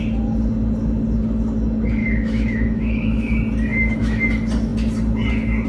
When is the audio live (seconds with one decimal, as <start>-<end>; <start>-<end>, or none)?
0.0-2.0; 3.3-3.7; 4.3-5.7